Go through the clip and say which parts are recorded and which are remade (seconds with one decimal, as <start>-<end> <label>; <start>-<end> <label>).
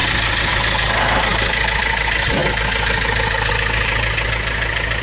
0.0-5.0 recorded